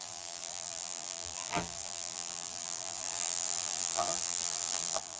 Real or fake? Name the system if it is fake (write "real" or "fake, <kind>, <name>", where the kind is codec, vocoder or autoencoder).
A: fake, vocoder, BigVGAN v2